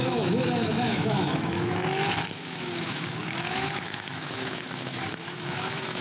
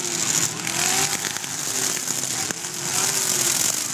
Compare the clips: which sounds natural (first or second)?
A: second